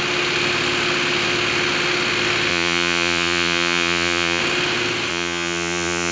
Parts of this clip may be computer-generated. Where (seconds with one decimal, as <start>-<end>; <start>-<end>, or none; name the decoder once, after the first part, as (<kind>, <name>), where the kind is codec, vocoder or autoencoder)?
2.5-4.4 (vocoder, Vocos); 5.1-6.1